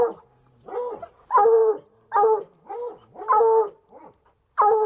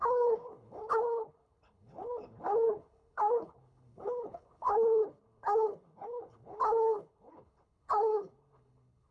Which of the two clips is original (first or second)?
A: first